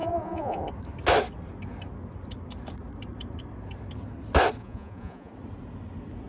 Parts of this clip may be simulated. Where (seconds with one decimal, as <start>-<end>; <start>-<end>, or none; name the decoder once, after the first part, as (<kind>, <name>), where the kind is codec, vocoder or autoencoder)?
0.0-0.6 (vocoder, Vocos); 4.6-5.3

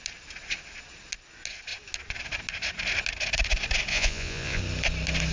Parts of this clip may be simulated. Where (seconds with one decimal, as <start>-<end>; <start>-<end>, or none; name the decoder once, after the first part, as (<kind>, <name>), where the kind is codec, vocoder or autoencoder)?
3.9-4.6 (vocoder, Vocos)

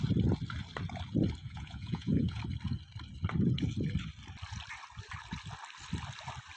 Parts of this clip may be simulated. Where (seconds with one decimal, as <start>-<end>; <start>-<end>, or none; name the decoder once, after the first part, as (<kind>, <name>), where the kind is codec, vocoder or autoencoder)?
1.4-2.4 (vocoder, Vocos)

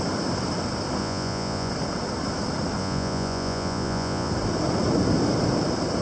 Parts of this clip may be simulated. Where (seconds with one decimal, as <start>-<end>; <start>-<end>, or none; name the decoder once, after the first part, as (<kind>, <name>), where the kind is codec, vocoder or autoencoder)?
1.0-1.7 (vocoder, Vocos); 2.8-4.3

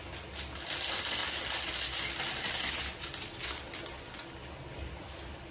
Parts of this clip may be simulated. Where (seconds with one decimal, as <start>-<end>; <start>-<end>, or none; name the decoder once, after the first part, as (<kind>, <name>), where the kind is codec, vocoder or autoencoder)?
none

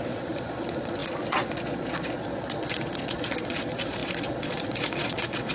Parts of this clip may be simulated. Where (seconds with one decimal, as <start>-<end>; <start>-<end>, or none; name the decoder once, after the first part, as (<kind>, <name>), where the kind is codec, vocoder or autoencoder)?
0.0-5.5 (vocoder, Vocos)

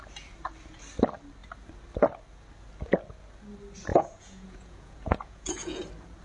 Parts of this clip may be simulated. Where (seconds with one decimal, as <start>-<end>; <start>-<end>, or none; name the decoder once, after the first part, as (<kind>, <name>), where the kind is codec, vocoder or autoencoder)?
3.9-5.8 (vocoder, Vocos)

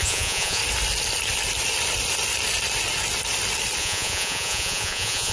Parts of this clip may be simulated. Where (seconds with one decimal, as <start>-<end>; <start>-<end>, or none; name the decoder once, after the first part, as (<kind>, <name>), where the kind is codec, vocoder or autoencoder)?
0.0-0.6 (vocoder, Vocos); 3.8-5.3